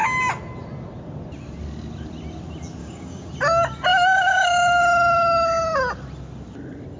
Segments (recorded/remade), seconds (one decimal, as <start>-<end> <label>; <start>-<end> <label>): 0.0-2.8 recorded; 2.8-3.3 remade; 3.3-3.9 recorded; 3.9-4.8 remade; 4.8-7.0 recorded